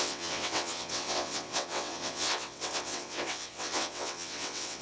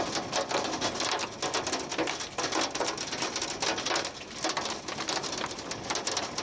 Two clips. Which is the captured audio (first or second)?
second